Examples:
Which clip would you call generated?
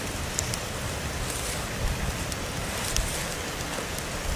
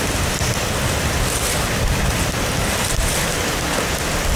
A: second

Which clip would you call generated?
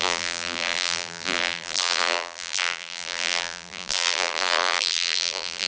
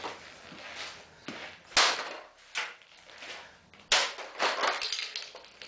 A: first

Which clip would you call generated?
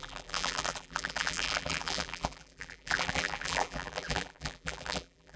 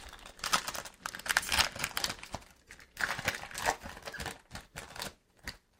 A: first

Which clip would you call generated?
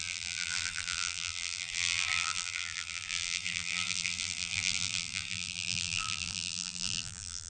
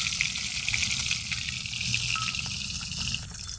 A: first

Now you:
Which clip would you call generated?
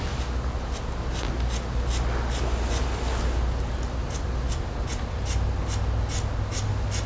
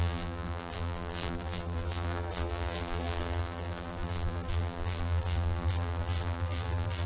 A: second